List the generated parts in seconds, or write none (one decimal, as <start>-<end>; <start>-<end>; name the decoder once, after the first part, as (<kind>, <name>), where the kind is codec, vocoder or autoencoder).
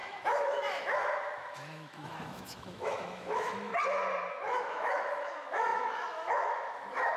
0.0-3.7 (autoencoder, DAC-VAE); 4.3-7.2